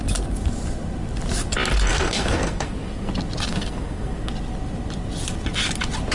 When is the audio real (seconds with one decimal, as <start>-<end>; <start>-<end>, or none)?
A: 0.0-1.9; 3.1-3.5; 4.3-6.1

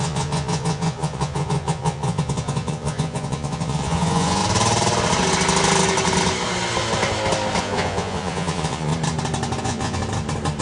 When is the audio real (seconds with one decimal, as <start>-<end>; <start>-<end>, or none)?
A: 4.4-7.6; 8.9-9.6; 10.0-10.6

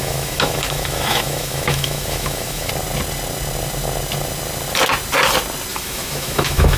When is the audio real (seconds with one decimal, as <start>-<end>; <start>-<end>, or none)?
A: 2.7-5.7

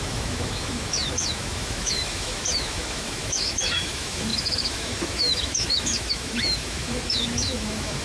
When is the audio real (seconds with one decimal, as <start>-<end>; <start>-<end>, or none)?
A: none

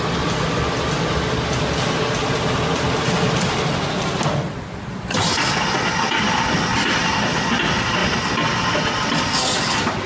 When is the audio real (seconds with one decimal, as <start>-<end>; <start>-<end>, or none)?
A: 0.0-10.1